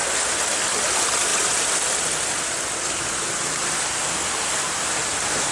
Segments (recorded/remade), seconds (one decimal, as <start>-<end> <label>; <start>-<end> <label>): 0.0-5.5 recorded